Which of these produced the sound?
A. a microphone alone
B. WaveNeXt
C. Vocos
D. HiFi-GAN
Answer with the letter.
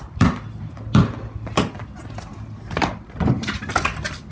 A